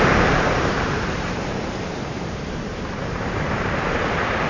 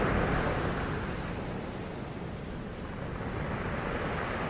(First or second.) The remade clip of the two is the first